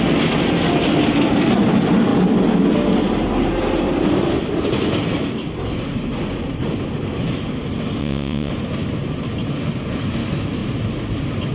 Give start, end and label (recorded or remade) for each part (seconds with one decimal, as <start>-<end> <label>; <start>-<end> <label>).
0.0-8.0 recorded; 8.0-8.5 remade; 8.5-11.5 recorded